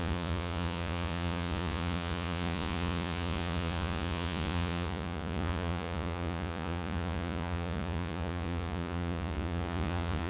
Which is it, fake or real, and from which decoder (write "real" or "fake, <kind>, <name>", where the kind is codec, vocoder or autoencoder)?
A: fake, vocoder, Vocos